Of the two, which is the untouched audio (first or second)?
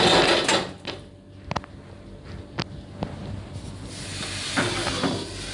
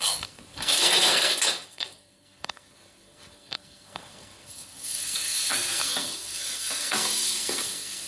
first